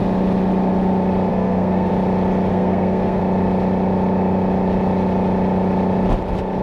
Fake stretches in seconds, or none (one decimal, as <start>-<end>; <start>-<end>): 1.3-1.9; 2.5-3.2